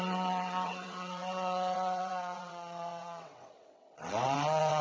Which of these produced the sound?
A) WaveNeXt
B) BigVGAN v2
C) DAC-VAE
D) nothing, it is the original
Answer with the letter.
A